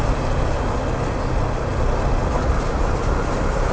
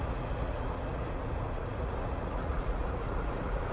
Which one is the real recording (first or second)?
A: first